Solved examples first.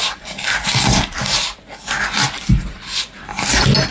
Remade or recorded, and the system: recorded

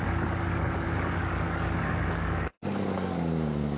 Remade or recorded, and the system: remade, codec, DAC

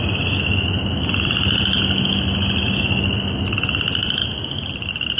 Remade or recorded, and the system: recorded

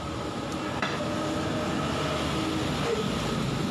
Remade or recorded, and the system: recorded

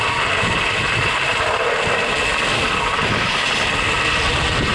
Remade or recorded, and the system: remade, vocoder, BigVGAN v2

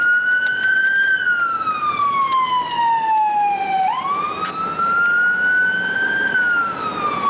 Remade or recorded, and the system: recorded